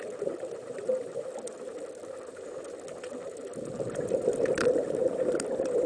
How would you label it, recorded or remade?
remade